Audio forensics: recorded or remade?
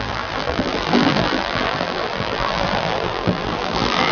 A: remade